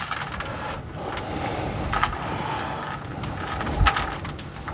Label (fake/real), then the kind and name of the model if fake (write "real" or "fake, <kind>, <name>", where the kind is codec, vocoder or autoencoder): real